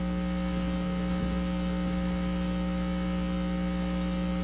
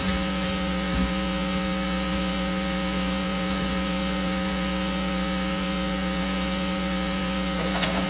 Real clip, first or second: first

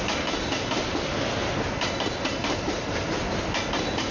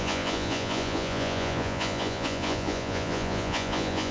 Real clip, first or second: first